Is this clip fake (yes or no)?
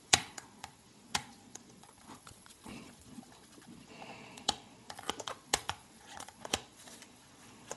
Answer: yes